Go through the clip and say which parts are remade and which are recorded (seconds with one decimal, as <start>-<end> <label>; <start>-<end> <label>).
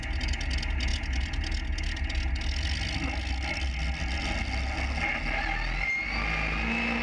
0.0-7.0 recorded